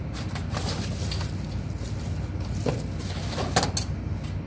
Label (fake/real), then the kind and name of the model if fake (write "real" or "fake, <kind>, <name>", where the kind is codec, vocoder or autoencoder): real